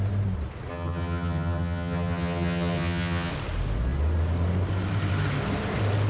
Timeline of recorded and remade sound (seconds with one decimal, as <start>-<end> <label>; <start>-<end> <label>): 0.0-0.7 recorded; 0.7-3.3 remade; 3.3-6.1 recorded